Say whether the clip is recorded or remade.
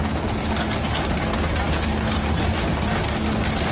recorded